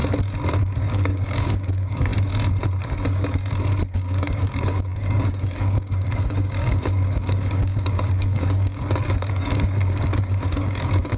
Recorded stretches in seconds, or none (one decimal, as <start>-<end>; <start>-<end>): 0.0-0.6; 2.1-2.8; 3.4-3.9